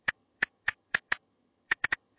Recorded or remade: remade